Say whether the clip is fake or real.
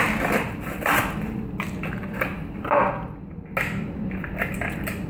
real